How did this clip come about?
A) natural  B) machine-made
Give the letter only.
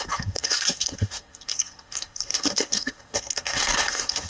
B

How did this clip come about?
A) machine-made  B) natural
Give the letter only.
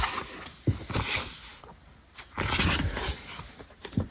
B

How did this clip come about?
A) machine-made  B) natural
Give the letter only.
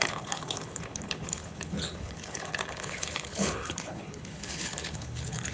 A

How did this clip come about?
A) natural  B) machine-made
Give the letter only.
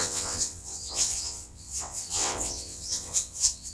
B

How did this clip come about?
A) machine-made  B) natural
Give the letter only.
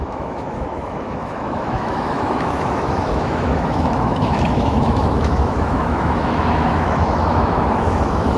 A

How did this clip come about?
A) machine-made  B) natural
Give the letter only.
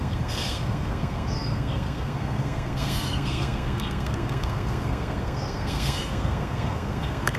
A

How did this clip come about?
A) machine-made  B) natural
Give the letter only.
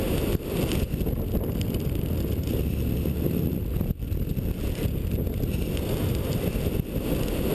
B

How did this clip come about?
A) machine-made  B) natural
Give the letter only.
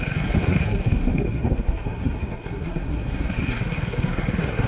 A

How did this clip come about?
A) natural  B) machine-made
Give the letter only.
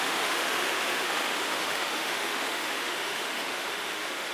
B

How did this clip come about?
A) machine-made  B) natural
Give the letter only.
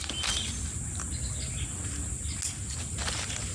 B